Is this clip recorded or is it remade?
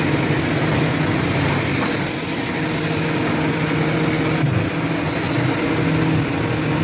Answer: recorded